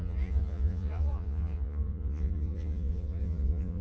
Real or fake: fake